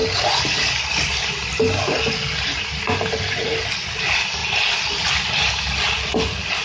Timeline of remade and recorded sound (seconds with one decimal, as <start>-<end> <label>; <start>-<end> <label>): 0.0-6.6 recorded